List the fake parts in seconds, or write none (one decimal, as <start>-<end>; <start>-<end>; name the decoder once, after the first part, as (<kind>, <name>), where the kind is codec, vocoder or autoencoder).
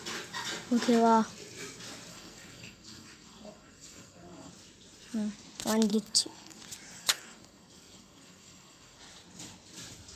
2.1-4.5 (codec, SNAC); 5.9-6.6; 7.0-9.0